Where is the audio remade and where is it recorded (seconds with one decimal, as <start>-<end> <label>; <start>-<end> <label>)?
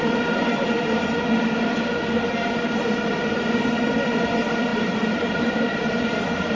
0.0-4.7 recorded; 4.7-5.6 remade; 5.6-6.5 recorded